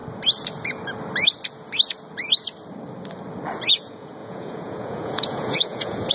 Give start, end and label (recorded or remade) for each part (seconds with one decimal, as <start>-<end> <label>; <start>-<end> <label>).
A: 0.0-3.7 recorded; 3.7-6.1 remade